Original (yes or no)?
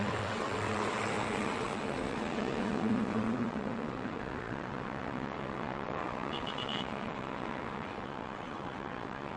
no